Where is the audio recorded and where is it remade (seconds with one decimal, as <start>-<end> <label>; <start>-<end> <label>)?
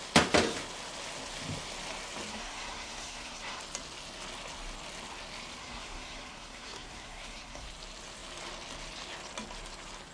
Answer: 0.0-2.3 recorded; 2.3-3.6 remade; 3.6-5.6 recorded; 5.6-7.7 remade; 7.7-10.1 recorded